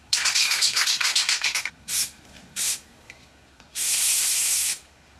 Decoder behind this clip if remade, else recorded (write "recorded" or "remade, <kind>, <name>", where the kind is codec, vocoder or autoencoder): remade, codec, SNAC